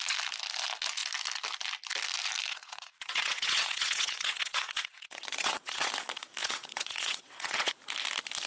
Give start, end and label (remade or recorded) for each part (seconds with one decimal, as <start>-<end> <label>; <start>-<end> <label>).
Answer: 0.0-2.5 recorded; 2.5-5.9 remade; 5.9-6.4 recorded; 6.4-7.7 remade; 7.7-8.5 recorded